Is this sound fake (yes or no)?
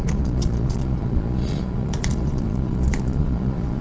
yes